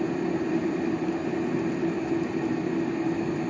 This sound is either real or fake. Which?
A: real